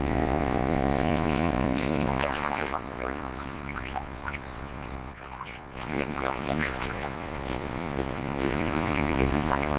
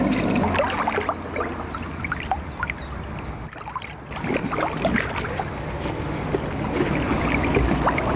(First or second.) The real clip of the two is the second